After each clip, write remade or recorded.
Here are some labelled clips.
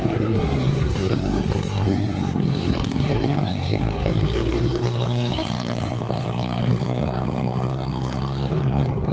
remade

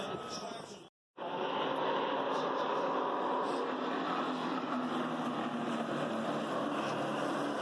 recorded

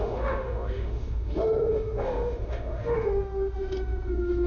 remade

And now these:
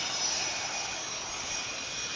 recorded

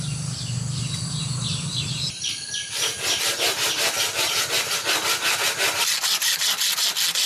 recorded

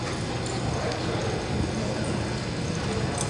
recorded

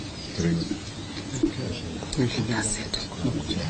recorded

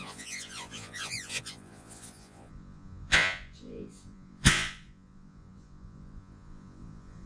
remade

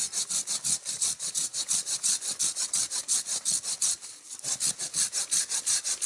recorded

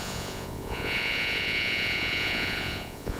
remade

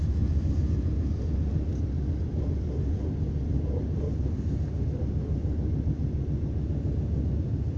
recorded